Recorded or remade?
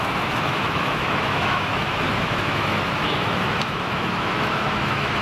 remade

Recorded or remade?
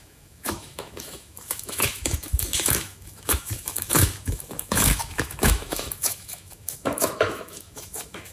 remade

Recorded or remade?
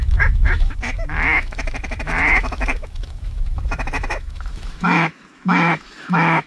remade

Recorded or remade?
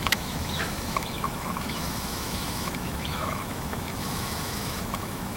remade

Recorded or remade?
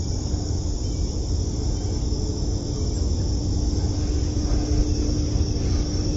recorded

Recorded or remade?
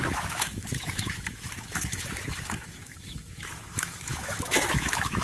remade